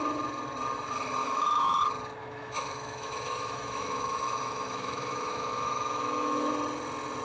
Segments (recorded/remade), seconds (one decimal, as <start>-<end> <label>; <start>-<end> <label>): 0.0-1.2 recorded; 1.2-1.8 remade; 1.8-2.2 recorded; 2.2-6.5 remade; 6.5-7.2 recorded